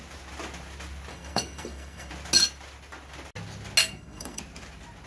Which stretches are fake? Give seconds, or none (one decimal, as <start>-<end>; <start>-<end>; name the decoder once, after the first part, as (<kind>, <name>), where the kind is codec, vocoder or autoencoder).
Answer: 1.1-2.1 (codec, SNAC); 3.8-4.4